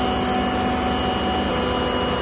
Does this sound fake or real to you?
real